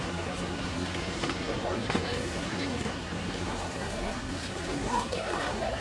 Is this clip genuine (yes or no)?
no